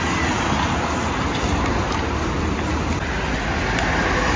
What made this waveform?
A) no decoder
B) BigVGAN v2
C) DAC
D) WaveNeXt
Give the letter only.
A